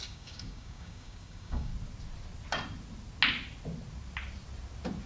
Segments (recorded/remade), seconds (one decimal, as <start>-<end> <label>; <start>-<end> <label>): 0.0-1.7 remade; 1.7-5.1 recorded